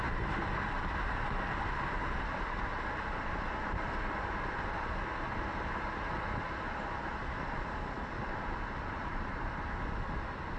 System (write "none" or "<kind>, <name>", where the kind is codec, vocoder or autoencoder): none